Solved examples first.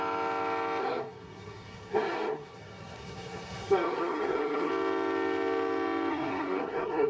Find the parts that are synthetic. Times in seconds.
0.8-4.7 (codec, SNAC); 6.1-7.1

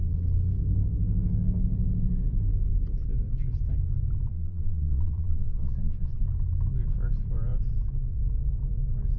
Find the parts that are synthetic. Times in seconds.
4.3-6.2 (vocoder, Vocos)